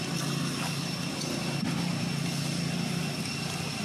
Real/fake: real